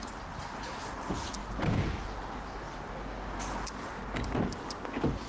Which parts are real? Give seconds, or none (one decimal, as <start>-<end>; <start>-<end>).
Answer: 0.0-5.3